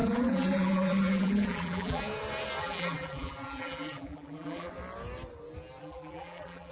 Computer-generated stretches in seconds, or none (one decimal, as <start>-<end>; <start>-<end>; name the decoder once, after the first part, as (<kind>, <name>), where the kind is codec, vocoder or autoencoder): 0.0-2.0 (vocoder, BigVGAN v2); 2.6-4.7; 5.8-6.7